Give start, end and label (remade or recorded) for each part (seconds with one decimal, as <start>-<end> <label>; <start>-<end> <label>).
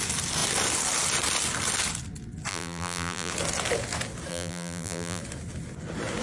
0.0-2.5 recorded; 2.5-3.3 remade; 3.3-4.3 recorded; 4.3-5.2 remade; 5.2-6.2 recorded